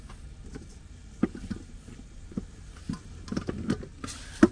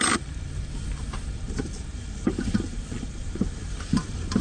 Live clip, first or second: first